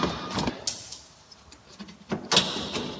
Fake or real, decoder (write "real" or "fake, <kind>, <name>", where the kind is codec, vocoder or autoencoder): real